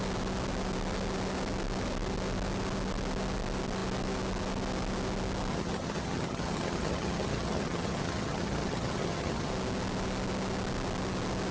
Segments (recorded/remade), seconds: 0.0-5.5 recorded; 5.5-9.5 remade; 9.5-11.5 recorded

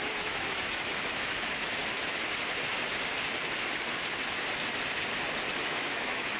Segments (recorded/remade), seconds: 0.0-1.8 remade; 1.8-5.6 recorded; 5.6-6.4 remade